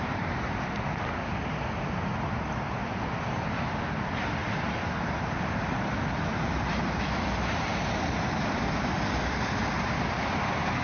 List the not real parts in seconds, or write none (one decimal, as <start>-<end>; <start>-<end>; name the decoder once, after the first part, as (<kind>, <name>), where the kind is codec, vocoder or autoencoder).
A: 0.0-2.8 (vocoder, BigVGAN v2); 3.6-4.4; 6.2-10.8